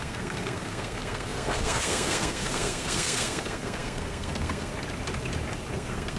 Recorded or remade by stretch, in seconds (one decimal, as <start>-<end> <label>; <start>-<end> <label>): 0.0-4.7 remade; 4.7-5.7 recorded; 5.7-6.2 remade